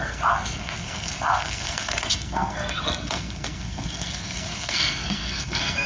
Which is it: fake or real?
fake